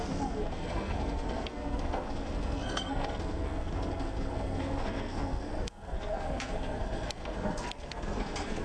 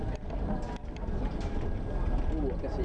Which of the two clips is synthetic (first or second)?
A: first